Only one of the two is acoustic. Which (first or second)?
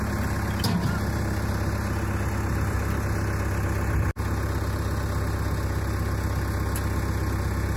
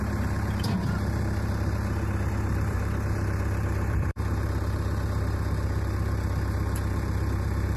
first